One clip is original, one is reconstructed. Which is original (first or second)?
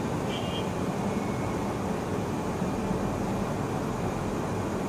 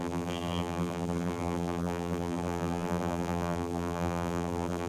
first